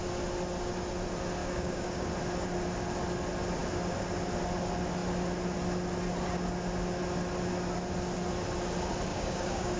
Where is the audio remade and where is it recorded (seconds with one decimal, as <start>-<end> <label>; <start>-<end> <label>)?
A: 0.0-1.4 recorded; 1.4-2.1 remade; 2.1-9.1 recorded; 9.1-9.8 remade